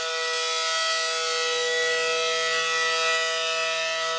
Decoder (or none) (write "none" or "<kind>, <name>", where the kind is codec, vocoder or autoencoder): none